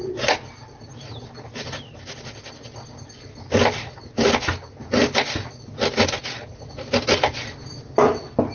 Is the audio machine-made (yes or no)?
no